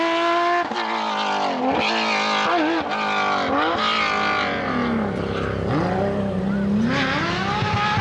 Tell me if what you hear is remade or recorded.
recorded